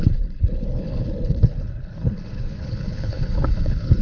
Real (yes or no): no